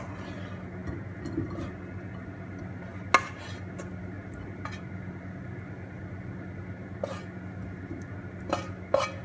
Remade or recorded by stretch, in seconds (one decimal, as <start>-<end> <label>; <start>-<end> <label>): 0.0-9.2 recorded